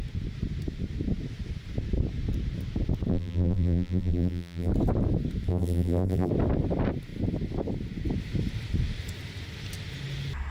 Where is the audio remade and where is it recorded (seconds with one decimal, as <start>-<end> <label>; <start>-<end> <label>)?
0.0-3.1 recorded; 3.1-4.7 remade; 4.7-5.5 recorded; 5.5-6.3 remade; 6.3-10.5 recorded